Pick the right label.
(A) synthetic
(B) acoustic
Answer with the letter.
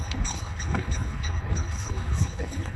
A